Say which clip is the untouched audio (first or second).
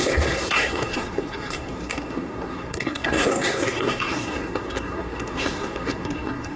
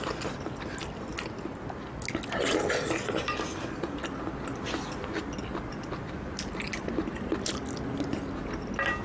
second